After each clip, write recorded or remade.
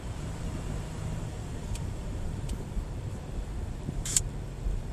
remade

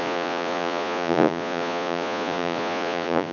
remade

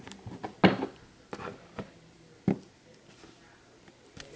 recorded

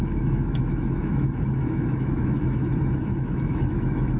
remade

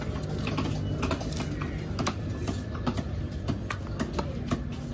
recorded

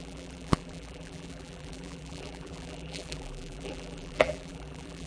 remade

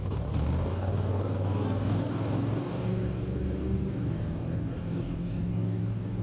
remade